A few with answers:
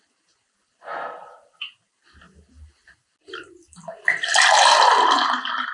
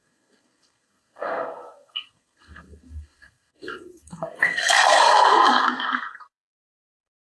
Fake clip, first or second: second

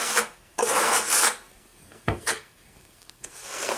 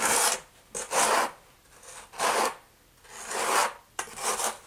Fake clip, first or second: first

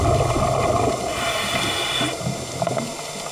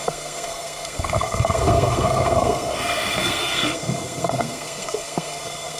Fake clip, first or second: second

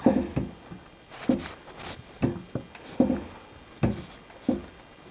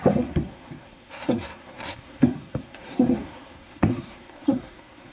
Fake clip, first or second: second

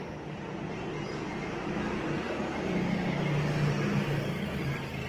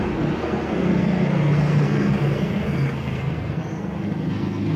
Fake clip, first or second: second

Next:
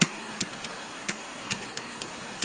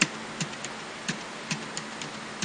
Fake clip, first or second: first